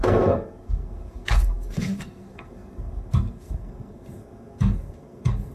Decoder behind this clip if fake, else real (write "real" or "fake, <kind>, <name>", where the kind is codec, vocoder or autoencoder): fake, codec, SNAC